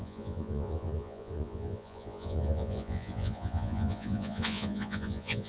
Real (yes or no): no